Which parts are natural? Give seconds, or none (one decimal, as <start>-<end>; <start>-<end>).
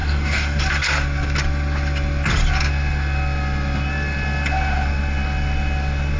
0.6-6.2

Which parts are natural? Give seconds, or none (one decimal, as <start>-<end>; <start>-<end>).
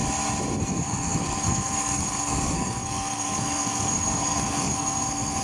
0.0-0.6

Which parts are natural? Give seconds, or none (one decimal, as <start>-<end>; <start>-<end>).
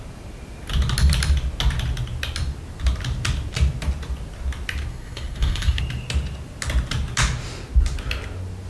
0.0-4.9; 5.8-8.7